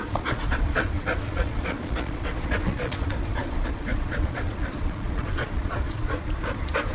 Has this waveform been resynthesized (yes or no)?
yes